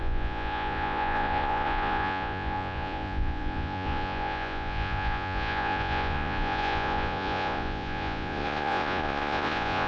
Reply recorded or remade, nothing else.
remade